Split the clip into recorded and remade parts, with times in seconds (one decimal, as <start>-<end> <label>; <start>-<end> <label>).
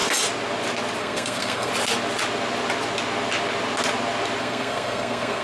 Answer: 0.0-1.0 recorded; 1.0-1.7 remade; 1.7-4.4 recorded; 4.4-5.4 remade